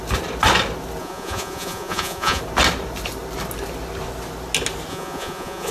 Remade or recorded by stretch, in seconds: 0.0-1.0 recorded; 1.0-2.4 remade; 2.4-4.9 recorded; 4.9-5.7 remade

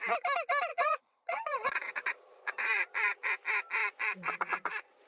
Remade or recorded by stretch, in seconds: 0.0-0.7 recorded; 0.7-3.3 remade; 3.3-3.8 recorded; 3.8-5.1 remade

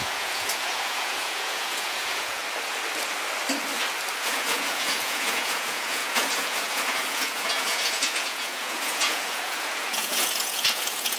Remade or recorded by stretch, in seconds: 0.0-2.4 remade; 2.4-4.2 recorded; 4.2-11.2 remade